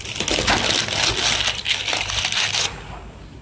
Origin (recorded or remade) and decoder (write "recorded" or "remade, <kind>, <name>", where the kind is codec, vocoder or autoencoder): recorded